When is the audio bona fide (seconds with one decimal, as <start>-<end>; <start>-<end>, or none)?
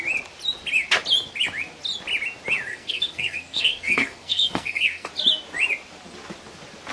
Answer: 0.0-2.7; 5.1-6.9